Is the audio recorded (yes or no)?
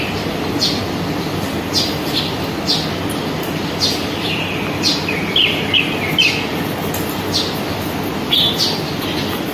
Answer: yes